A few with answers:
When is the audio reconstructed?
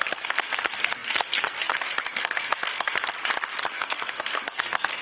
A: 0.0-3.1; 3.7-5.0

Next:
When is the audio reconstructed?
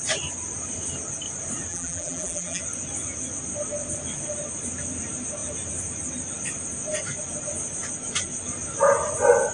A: 1.7-2.6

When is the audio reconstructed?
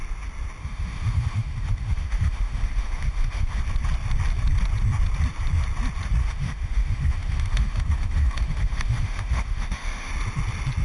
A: 0.6-3.6; 6.2-10.1